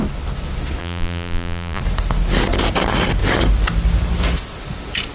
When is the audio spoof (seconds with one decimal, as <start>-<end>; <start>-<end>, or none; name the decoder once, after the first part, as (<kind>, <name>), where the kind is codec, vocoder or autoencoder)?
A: 0.8-1.8 (vocoder, BigVGAN v2)